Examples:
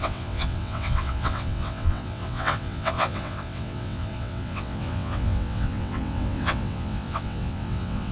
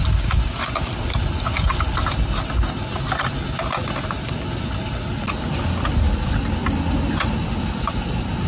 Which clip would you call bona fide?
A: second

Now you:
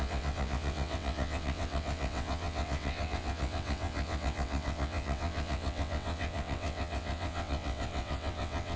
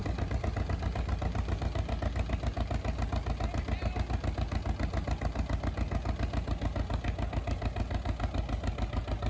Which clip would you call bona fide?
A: second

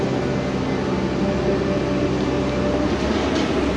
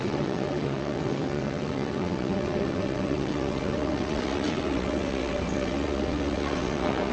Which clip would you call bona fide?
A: first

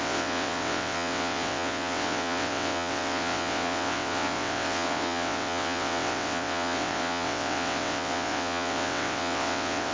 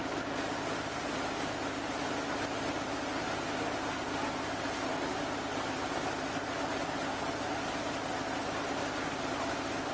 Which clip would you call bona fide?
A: second